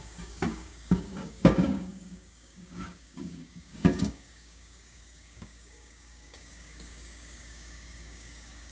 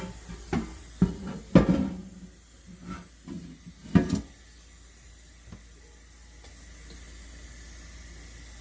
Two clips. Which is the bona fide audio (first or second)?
second